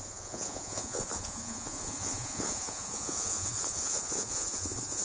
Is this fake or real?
fake